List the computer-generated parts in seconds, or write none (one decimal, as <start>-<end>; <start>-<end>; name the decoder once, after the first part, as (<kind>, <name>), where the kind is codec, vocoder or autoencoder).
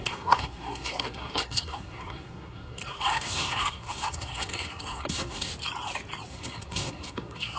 0.0-5.5 (codec, SNAC); 6.3-7.6